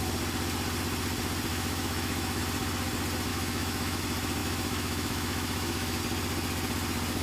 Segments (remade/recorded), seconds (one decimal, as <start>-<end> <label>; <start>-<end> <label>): 0.0-1.5 recorded; 1.5-2.4 remade; 2.4-3.3 recorded; 3.3-4.0 remade; 4.0-4.4 recorded; 4.4-6.0 remade; 6.0-7.2 recorded